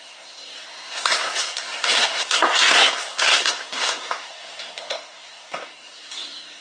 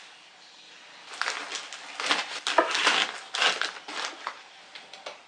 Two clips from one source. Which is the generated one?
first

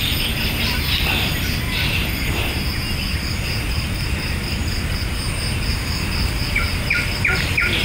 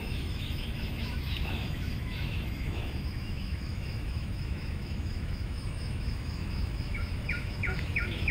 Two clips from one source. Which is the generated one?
second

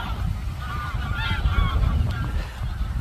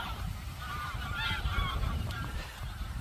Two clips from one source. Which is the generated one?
second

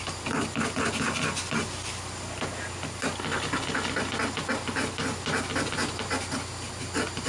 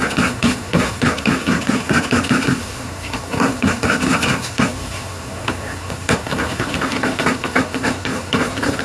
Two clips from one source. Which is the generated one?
second